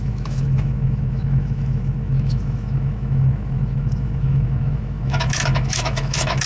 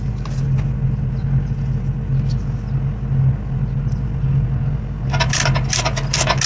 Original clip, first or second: second